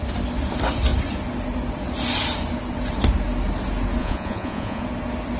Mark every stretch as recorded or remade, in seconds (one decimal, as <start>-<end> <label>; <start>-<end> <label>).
0.0-4.0 recorded; 4.0-4.8 remade; 4.8-5.4 recorded